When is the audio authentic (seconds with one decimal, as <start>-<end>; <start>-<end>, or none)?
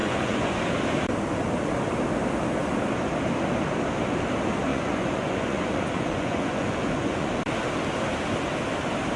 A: 0.6-4.7; 7.3-9.2